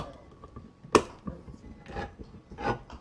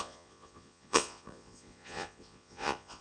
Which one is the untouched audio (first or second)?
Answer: first